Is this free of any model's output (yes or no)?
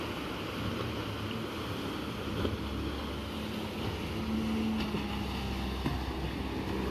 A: yes